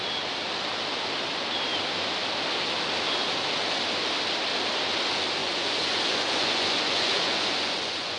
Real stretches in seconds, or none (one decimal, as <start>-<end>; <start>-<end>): 0.0-5.4